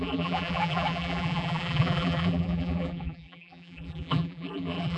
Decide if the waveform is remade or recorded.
remade